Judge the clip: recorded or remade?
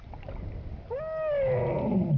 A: recorded